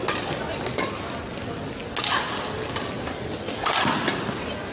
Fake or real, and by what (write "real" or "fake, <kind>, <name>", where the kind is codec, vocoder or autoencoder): real